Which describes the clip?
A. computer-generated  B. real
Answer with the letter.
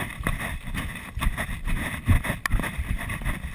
A